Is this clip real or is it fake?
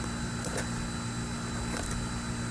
real